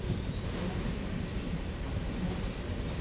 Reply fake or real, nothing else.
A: real